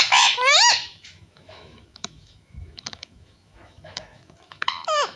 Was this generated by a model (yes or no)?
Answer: yes